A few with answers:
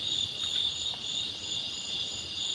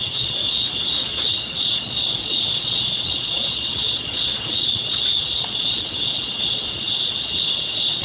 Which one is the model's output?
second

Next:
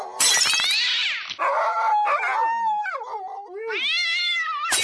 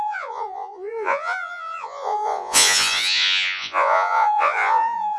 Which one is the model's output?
second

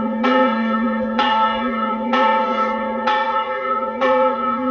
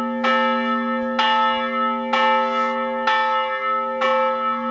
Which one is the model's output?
first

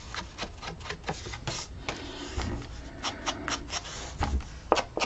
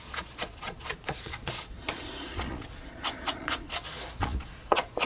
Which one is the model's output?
second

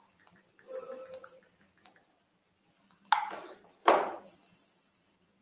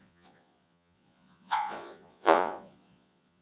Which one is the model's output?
second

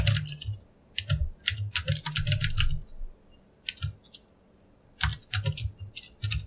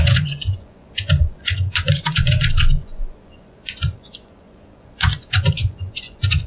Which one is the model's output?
second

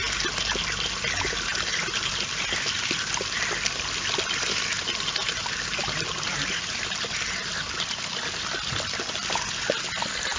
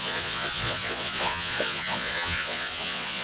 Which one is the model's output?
second